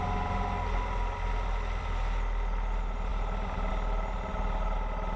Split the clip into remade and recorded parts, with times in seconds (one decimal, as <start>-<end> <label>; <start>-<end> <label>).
0.0-5.2 recorded